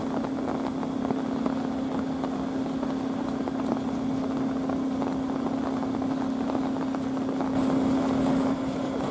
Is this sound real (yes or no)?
yes